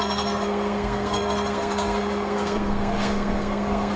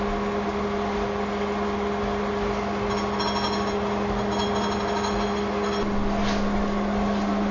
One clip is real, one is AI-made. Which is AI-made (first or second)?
first